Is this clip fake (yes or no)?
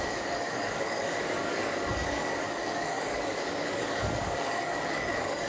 yes